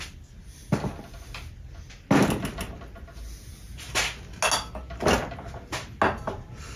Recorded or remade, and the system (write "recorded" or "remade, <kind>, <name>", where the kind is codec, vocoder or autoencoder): recorded